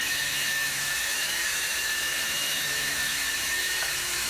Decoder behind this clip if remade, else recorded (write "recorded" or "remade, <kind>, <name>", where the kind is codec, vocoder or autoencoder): remade, autoencoder, DAC-VAE